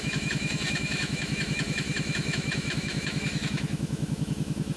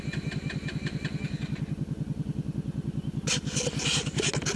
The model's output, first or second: first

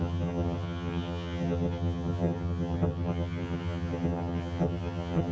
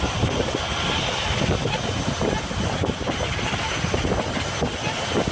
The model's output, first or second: first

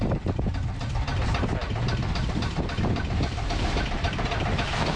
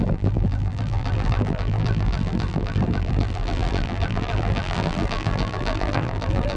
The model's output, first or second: second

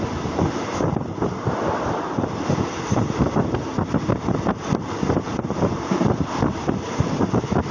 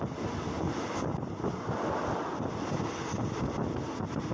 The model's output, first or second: first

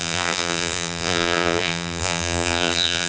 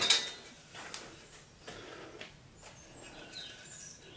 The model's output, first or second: first